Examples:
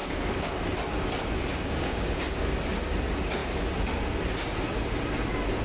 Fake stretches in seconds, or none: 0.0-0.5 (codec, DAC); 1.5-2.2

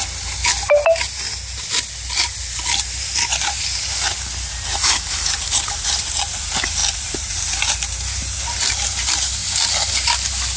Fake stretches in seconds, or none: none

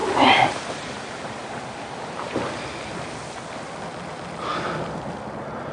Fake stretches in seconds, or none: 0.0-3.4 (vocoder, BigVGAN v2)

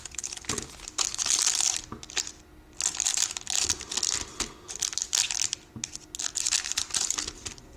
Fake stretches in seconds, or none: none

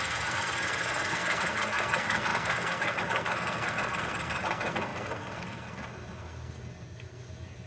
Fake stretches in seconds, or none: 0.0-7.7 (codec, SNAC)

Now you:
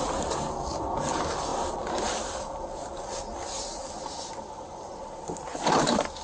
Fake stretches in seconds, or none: none

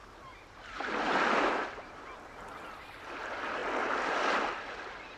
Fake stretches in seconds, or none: 0.0-3.1 (vocoder, BigVGAN v2)

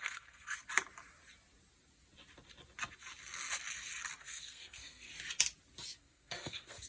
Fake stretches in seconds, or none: 0.0-0.6 (codec, SNAC); 4.2-5.1; 6.0-6.9